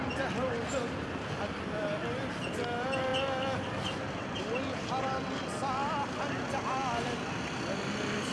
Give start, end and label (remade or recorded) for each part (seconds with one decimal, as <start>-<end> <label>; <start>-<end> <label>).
0.0-6.8 recorded; 6.8-7.4 remade; 7.4-8.3 recorded